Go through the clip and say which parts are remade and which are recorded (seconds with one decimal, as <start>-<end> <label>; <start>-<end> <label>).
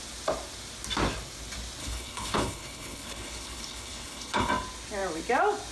0.0-1.8 recorded; 1.8-4.5 remade; 4.5-5.7 recorded